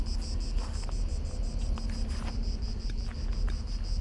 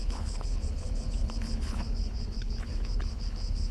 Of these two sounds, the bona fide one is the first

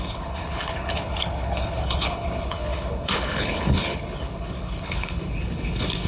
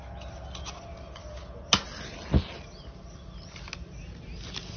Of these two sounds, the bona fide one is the second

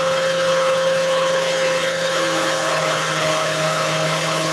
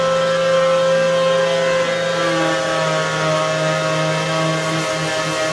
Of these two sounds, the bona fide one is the second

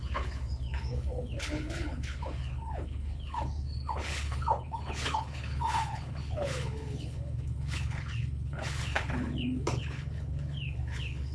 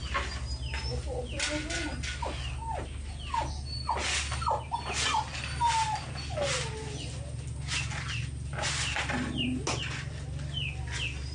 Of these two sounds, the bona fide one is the second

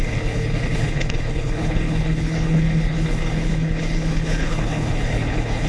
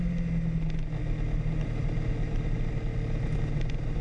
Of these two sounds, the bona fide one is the second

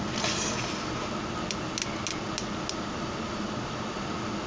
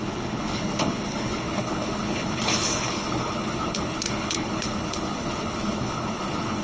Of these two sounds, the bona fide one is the first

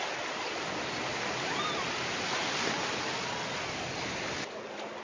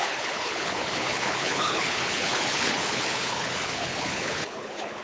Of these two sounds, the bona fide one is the first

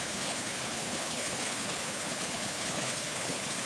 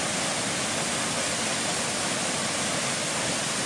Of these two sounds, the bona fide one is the second